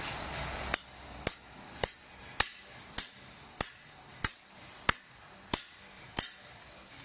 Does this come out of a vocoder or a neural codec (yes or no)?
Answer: no